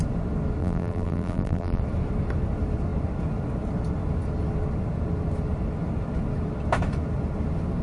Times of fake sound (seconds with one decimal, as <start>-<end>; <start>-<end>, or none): 0.6-1.8